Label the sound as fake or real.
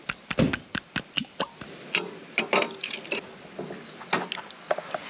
real